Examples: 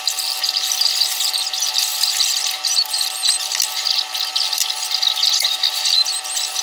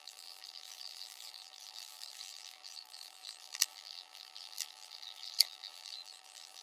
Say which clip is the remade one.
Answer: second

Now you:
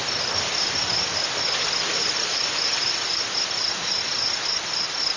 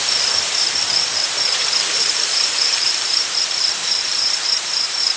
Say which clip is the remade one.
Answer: second